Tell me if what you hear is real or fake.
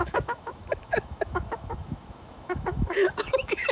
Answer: fake